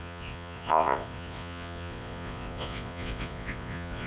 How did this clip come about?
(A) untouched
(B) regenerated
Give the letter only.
B